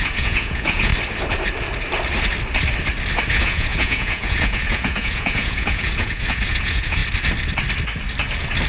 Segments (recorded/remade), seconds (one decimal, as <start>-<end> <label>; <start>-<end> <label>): 0.0-0.9 remade; 0.9-3.3 recorded; 3.3-7.0 remade; 7.0-8.7 recorded